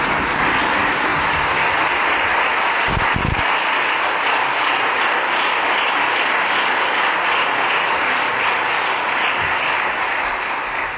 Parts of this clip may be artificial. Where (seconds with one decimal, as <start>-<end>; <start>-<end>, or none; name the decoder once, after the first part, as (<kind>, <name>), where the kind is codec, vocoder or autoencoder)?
none